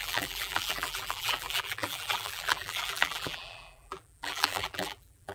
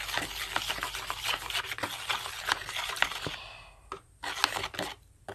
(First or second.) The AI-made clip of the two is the first